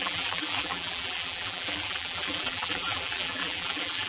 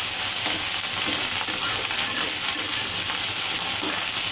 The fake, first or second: first